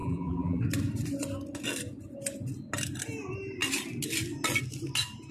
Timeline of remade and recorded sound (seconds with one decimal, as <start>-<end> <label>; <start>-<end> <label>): 0.0-0.6 remade; 0.6-5.3 recorded